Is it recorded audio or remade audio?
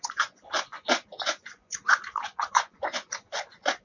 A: remade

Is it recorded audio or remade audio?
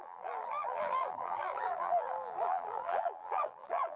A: remade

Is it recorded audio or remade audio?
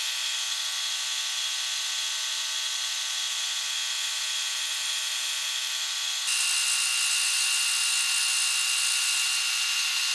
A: recorded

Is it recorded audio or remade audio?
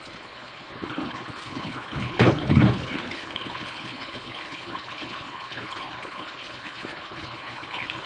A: remade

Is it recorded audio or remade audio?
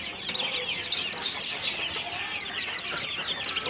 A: recorded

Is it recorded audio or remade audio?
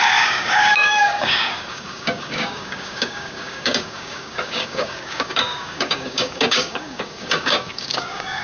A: remade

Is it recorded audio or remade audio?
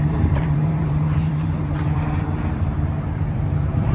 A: remade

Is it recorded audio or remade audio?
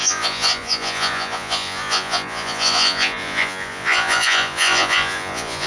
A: remade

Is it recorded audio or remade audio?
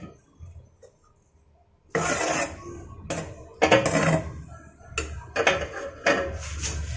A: recorded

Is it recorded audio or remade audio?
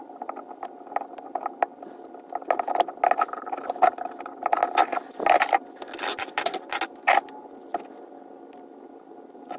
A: recorded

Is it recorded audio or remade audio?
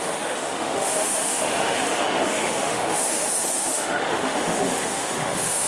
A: remade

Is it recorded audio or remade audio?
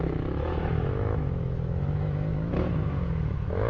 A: remade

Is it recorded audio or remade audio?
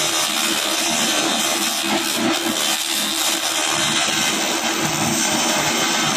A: recorded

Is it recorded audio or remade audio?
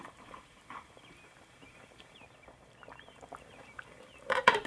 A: remade